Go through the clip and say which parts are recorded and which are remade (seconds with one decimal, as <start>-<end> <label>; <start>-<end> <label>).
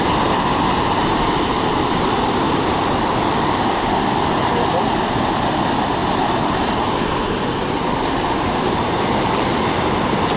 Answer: 0.0-10.4 recorded